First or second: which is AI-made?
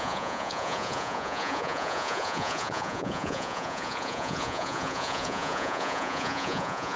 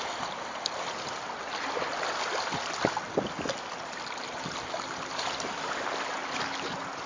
first